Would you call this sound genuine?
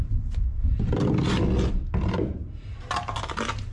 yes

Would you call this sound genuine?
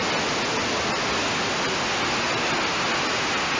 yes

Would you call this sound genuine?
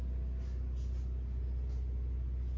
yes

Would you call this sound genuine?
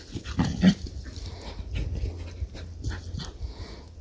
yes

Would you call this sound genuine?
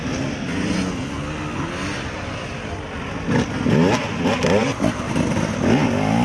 yes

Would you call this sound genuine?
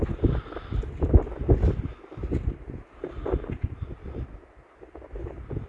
yes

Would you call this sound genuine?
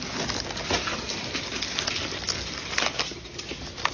yes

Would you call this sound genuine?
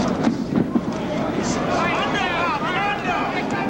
yes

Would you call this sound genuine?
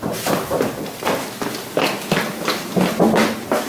yes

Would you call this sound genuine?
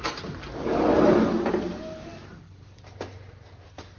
yes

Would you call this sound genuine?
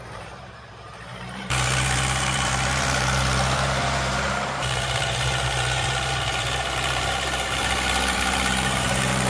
no